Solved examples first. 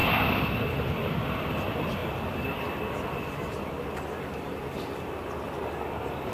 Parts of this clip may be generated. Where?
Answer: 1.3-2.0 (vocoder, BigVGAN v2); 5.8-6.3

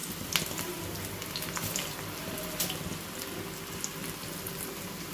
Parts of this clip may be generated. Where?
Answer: 0.0-2.3 (vocoder, BigVGAN v2); 4.0-5.1

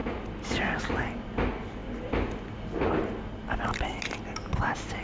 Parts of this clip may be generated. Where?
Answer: none

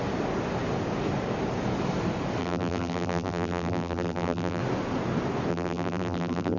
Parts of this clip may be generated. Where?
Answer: 2.4-4.6 (vocoder, BigVGAN v2); 5.5-6.6

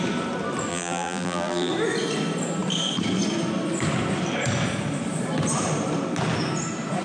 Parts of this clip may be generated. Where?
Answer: 0.7-1.7 (vocoder, BigVGAN v2)

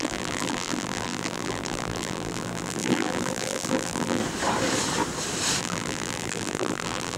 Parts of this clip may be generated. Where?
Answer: 0.0-4.2 (vocoder, BigVGAN v2); 5.6-7.2